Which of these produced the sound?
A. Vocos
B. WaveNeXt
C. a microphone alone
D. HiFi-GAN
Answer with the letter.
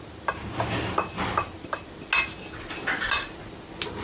C